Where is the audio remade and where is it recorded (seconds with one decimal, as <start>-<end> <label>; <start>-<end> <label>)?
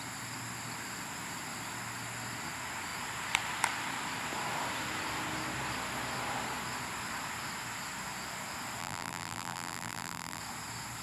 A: 0.0-8.8 recorded; 8.8-10.4 remade; 10.4-11.0 recorded